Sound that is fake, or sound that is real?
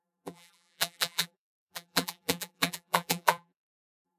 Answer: fake